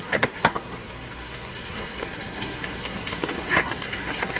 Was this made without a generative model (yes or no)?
no